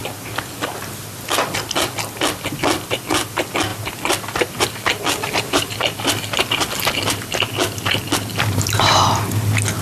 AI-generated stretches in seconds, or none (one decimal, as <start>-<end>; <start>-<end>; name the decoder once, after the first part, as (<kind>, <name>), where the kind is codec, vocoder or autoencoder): none